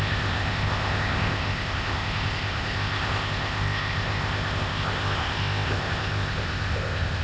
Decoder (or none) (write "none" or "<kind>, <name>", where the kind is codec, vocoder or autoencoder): codec, ZipCodec